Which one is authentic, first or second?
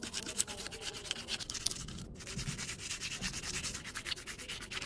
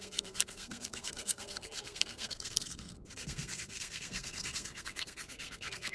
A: first